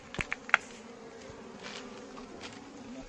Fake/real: real